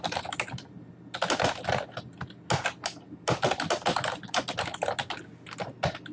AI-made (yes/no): no